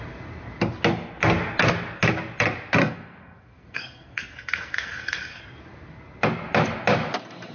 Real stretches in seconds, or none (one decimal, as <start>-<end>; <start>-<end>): 0.0-2.8; 5.4-7.5

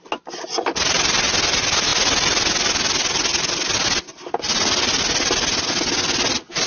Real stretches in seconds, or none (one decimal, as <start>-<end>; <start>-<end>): 0.0-6.7

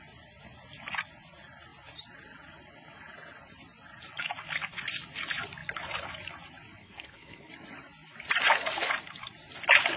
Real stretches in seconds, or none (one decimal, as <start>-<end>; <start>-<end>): 0.0-6.8; 7.5-10.0

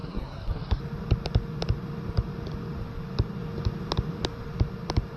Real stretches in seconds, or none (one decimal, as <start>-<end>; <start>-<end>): 0.8-5.2

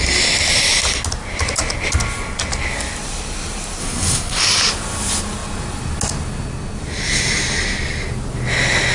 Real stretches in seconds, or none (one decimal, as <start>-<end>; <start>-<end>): 0.0-3.8; 4.4-8.9